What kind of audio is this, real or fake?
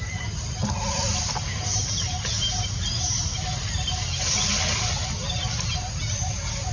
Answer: real